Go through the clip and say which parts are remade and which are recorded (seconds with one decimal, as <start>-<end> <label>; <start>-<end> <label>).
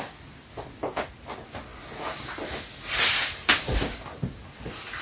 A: 0.0-5.0 recorded